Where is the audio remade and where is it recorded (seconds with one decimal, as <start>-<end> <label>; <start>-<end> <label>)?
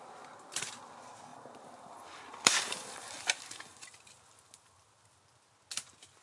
0.0-1.3 recorded; 1.3-3.9 remade; 3.9-6.2 recorded